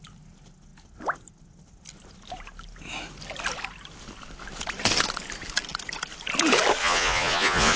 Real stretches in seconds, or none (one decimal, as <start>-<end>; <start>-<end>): 0.0-6.8